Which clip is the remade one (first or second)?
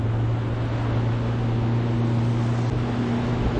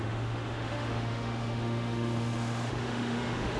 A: second